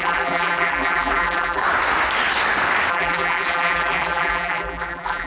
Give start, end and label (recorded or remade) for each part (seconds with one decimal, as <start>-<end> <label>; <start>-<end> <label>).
0.0-1.6 remade; 1.6-2.9 recorded; 2.9-5.3 remade